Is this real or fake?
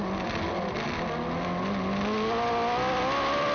real